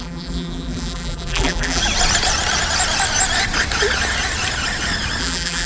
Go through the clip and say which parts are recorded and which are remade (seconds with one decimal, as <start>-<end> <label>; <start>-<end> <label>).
0.0-1.8 remade; 1.8-5.2 recorded; 5.2-5.7 remade